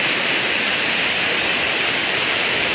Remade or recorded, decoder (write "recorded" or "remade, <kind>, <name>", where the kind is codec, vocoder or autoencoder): remade, vocoder, BigVGAN v2